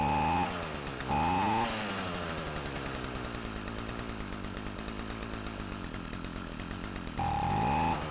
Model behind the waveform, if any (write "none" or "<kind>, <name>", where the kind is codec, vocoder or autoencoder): none